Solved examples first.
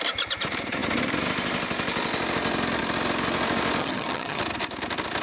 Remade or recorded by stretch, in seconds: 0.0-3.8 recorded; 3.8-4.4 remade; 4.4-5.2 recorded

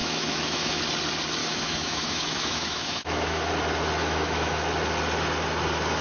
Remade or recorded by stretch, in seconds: 0.0-0.8 remade; 0.8-1.4 recorded; 1.4-3.5 remade; 3.5-4.0 recorded; 4.0-4.6 remade; 4.6-6.0 recorded

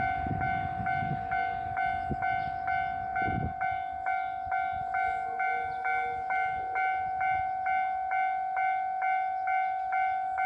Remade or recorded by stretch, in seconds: 0.0-10.5 recorded